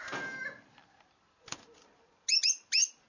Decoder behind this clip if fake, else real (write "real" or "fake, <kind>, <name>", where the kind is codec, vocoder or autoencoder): real